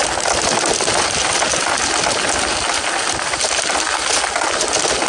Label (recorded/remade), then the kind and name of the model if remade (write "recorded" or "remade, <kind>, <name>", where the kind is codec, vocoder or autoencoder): recorded